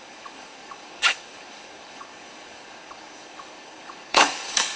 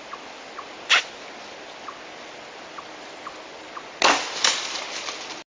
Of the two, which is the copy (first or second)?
first